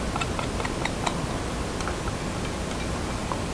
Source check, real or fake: real